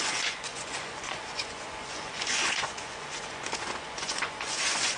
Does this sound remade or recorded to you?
remade